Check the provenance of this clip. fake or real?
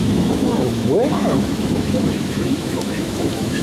fake